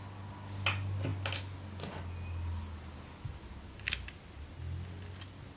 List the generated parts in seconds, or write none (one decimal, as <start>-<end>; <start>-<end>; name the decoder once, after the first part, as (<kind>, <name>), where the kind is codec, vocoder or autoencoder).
none